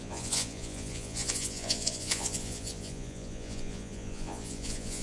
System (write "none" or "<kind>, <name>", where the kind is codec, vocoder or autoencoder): vocoder, Vocos